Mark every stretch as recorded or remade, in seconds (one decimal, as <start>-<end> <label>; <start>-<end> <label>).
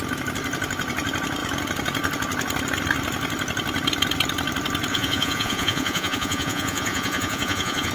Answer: 0.0-4.9 recorded; 4.9-7.9 remade